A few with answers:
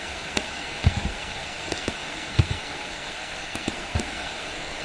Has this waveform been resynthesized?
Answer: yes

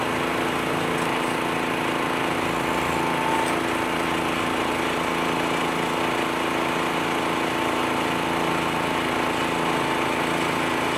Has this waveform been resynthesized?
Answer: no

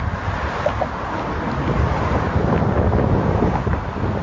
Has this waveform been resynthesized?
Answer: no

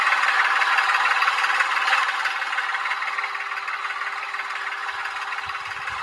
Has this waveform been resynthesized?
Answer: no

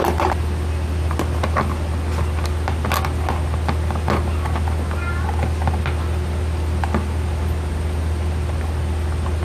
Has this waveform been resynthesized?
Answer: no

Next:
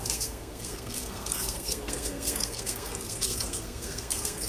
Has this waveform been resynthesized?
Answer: yes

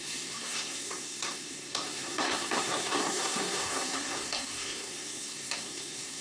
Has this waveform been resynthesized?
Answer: yes